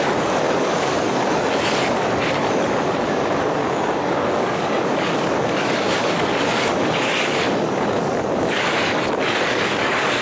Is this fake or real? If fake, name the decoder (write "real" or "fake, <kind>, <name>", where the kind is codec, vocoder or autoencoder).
fake, codec, DAC